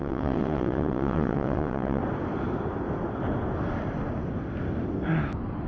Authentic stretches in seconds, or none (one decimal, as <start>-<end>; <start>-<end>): 2.0-5.7